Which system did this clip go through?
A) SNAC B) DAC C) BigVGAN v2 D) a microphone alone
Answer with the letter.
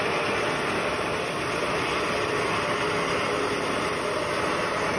D